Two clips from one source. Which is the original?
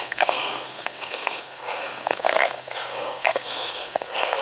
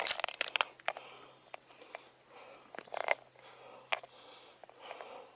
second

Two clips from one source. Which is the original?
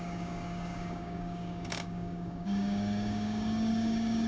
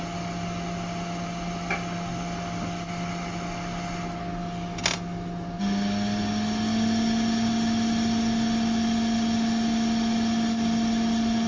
second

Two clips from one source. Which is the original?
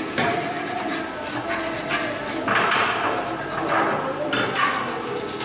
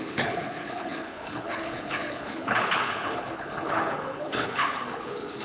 first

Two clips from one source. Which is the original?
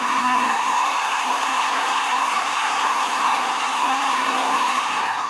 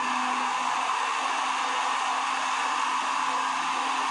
second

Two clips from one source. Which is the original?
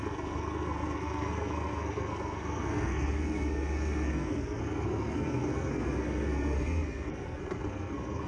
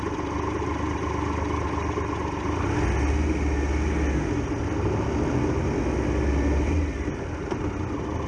second